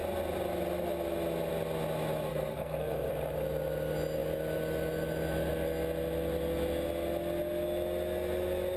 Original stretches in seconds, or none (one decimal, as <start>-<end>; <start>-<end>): 0.0-2.3; 3.1-8.8